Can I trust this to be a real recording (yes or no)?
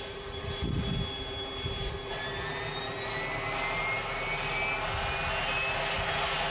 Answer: yes